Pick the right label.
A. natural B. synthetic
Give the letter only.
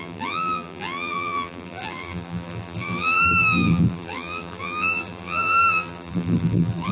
B